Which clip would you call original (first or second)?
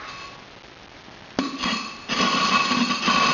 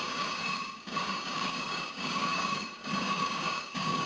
first